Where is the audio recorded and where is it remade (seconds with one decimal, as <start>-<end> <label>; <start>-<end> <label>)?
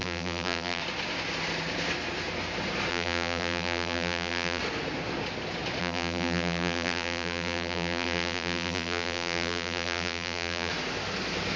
0.0-0.8 remade; 0.8-2.9 recorded; 2.9-4.6 remade; 4.6-5.8 recorded; 5.8-10.7 remade; 10.7-11.6 recorded